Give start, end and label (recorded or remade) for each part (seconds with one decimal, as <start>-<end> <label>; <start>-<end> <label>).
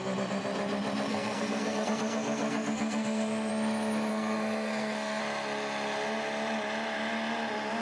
0.0-1.1 recorded; 1.1-3.5 remade; 3.5-4.1 recorded; 4.1-5.2 remade; 5.2-7.8 recorded